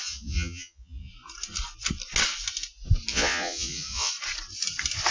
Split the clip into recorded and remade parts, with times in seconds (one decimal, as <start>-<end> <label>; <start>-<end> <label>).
0.0-1.1 remade; 1.1-3.1 recorded; 3.1-4.1 remade; 4.1-5.1 recorded